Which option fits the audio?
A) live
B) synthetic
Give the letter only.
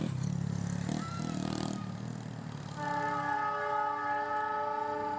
A